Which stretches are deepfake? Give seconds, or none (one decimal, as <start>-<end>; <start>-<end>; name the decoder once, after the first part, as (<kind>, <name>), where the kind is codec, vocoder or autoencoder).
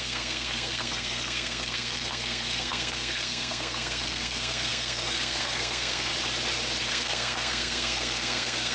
0.0-6.1 (codec, SNAC); 6.9-8.7